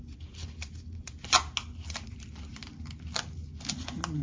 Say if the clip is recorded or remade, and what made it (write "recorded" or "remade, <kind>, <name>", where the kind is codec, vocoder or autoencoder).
recorded